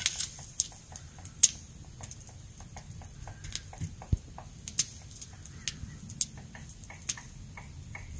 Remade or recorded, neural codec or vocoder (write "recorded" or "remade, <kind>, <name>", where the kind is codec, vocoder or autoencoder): recorded